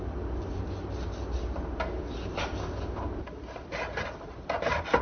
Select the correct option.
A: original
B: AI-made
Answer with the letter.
A